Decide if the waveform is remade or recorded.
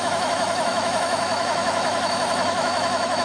remade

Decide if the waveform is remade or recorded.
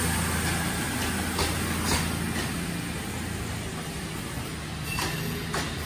recorded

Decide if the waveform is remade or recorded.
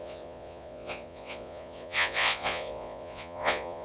remade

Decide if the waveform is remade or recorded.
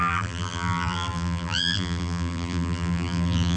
remade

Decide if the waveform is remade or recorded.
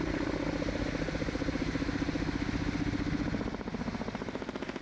recorded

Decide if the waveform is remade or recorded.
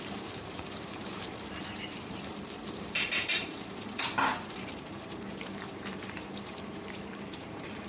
remade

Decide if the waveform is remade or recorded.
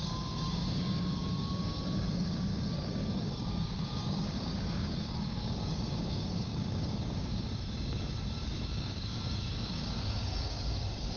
remade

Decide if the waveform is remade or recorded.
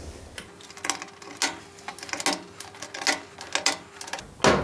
recorded